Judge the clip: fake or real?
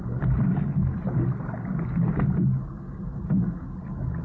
real